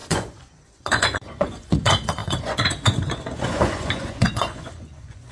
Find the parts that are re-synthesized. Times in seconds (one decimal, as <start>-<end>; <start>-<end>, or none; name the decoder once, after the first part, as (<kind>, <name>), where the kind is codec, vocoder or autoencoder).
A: 0.0-5.3 (vocoder, Vocos)